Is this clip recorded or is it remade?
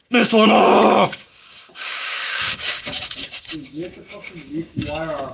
remade